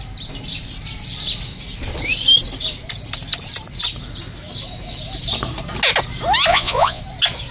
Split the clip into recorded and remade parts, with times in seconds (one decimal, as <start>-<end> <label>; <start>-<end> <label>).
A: 0.0-6.5 recorded; 6.5-7.0 remade; 7.0-7.5 recorded